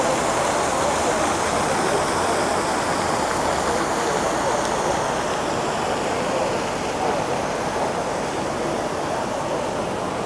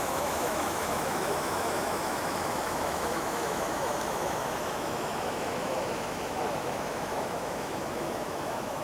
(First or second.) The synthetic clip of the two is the second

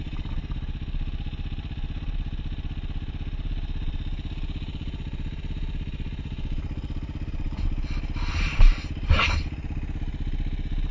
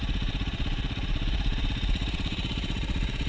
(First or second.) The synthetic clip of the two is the second